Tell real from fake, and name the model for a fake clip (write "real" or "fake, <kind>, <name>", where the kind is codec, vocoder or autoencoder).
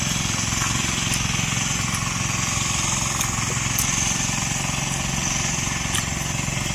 real